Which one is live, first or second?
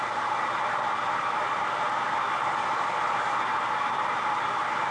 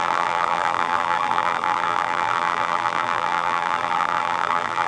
first